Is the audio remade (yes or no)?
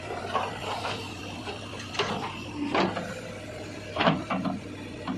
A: yes